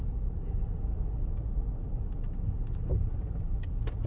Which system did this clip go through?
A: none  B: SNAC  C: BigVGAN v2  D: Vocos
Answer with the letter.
A